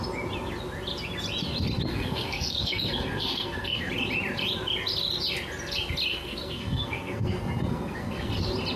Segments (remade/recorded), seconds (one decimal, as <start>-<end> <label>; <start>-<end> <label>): 0.0-1.9 recorded; 1.9-3.9 remade; 3.9-6.1 recorded; 6.1-8.3 remade; 8.3-8.8 recorded